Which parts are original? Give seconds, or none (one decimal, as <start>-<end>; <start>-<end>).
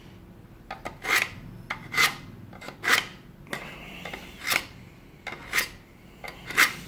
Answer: 0.0-6.9